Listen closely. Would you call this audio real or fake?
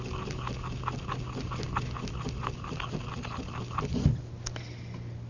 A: real